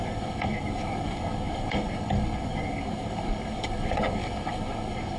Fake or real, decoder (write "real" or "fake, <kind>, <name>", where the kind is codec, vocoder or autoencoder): fake, codec, DAC